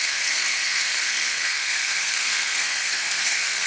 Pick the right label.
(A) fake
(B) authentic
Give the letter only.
A